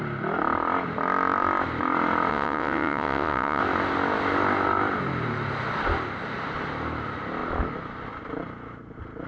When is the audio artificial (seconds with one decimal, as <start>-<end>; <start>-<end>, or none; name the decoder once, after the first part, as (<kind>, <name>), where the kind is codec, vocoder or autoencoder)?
2.3-3.6 (vocoder, WaveNeXt)